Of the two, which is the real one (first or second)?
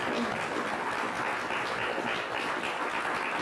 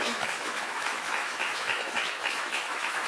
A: first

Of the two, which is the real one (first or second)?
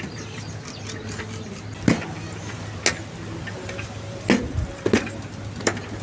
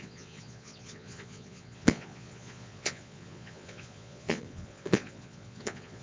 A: first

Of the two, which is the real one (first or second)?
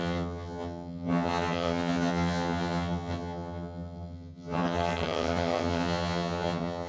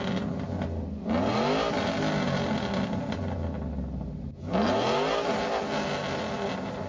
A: second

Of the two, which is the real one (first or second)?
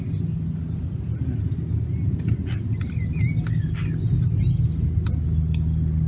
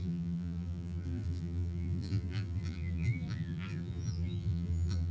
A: first